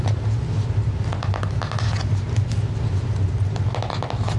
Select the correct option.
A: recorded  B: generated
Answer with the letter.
A